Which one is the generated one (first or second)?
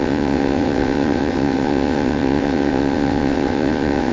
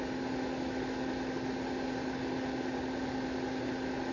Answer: first